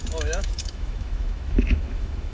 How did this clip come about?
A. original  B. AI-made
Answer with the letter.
B